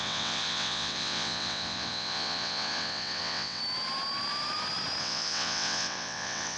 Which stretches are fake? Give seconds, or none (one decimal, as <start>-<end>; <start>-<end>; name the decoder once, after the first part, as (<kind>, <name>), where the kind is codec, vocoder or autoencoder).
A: 0.0-3.6 (vocoder, WaveNeXt); 5.0-6.6